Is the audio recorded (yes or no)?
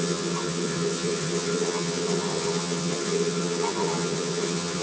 no